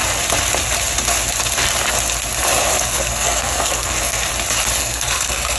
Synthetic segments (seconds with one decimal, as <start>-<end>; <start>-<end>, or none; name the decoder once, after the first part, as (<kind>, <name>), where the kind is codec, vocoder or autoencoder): 2.7-4.3 (codec, SNAC); 4.8-5.6

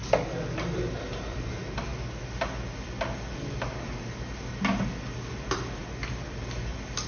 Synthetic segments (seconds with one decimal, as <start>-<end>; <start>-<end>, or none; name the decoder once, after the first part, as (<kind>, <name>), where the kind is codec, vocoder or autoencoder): none

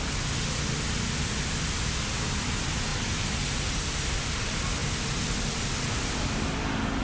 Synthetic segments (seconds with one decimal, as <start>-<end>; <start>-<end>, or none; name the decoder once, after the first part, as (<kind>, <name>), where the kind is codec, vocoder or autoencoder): none